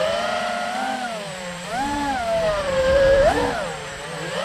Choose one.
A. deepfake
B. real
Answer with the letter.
A